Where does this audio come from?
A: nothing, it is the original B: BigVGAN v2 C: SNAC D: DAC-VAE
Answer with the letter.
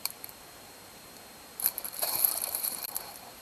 B